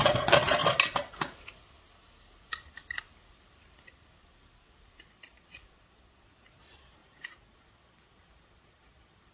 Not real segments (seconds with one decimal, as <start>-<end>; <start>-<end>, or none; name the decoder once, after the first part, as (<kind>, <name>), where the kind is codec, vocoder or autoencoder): 0.0-0.6 (vocoder, Vocos); 5.0-9.3

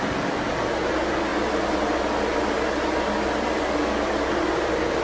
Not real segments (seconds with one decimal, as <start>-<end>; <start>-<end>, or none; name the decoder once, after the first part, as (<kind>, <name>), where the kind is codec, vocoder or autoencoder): none

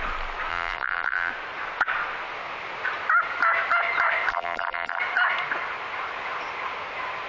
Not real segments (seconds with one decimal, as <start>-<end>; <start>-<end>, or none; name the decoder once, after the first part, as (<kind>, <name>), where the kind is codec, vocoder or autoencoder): 0.5-1.3 (vocoder, BigVGAN v2); 4.3-5.0

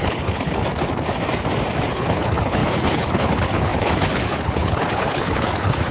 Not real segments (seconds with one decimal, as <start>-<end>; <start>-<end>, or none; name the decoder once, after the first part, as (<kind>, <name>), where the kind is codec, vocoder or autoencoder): 0.0-0.6 (codec, HILCodec); 1.9-5.9

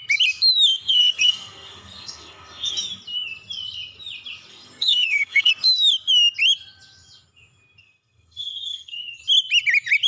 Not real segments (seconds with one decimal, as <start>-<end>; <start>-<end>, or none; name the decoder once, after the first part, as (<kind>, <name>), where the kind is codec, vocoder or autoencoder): 0.7-2.7 (codec, SNAC); 4.5-5.5; 7.8-9.2

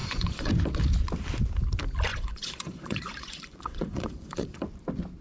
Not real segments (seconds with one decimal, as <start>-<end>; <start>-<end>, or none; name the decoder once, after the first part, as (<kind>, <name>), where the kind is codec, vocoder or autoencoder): 0.0-0.5 (vocoder, Vocos); 2.1-4.6

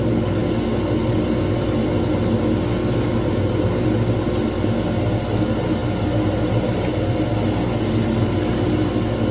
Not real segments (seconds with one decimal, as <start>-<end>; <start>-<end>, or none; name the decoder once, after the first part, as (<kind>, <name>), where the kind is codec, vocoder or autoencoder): none

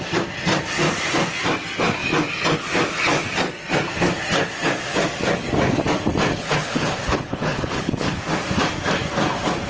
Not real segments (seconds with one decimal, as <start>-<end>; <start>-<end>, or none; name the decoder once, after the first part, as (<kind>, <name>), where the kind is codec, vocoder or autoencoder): 6.3-8.2 (codec, HILCodec)